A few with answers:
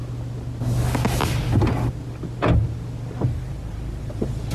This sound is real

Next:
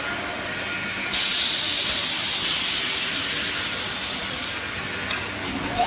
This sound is real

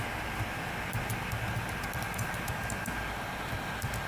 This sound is real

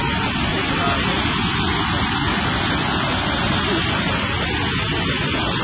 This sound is real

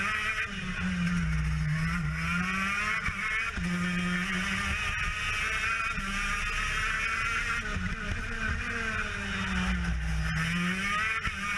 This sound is real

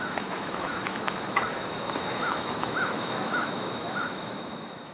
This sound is fake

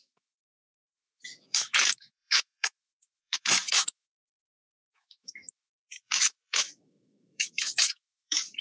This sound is fake